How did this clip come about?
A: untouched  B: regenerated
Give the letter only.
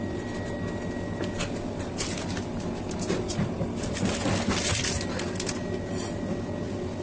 A